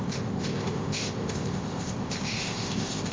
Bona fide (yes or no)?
no